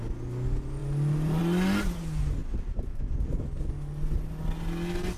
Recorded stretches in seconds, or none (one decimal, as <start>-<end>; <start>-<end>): 0.0-5.2